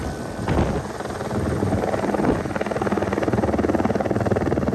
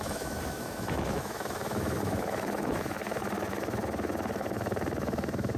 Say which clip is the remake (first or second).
second